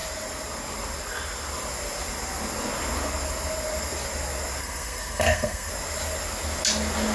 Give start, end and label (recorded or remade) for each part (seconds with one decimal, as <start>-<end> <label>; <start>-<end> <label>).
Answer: 0.0-4.6 recorded; 4.6-5.7 remade; 5.7-7.1 recorded